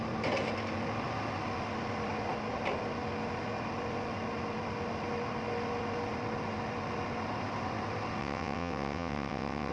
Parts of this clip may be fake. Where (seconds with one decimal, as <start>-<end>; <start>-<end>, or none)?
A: 8.2-9.7